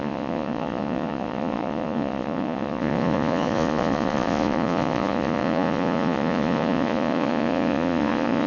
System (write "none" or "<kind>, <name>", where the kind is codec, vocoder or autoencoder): vocoder, Vocos